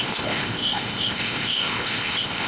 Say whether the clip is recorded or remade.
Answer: remade